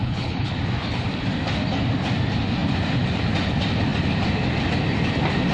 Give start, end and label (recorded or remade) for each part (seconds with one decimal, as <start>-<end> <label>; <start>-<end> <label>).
0.0-0.5 remade; 0.5-5.5 recorded